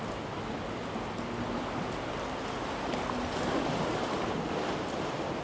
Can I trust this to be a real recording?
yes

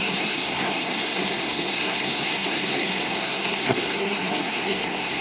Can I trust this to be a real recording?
no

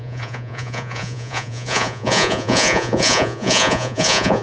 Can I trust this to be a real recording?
no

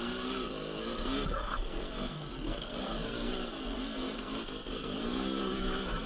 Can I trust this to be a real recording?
no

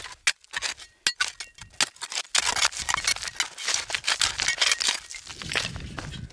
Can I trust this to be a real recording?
yes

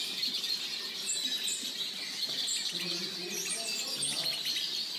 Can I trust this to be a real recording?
yes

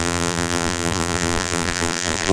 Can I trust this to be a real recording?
no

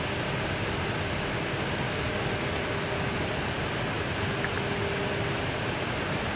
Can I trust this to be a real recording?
yes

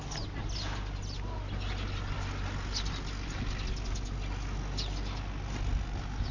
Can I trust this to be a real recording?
yes